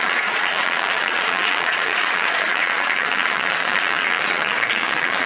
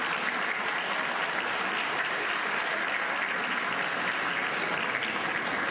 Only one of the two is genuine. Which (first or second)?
second